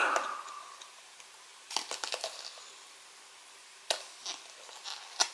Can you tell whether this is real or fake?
real